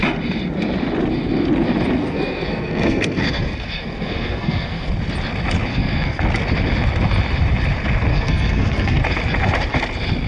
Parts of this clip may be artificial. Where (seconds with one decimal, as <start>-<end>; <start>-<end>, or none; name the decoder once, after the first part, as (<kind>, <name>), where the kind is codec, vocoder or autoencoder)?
2.0-4.9 (codec, SNAC); 5.7-6.2; 8.1-9.0